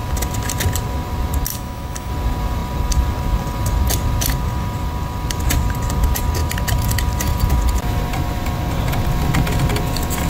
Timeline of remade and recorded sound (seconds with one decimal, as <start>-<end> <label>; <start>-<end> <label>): 0.0-1.5 recorded; 1.5-2.1 remade; 2.1-10.3 recorded